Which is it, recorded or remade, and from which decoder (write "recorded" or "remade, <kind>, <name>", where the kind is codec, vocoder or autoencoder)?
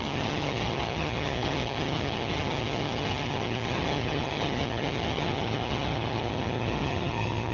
remade, vocoder, HiFi-GAN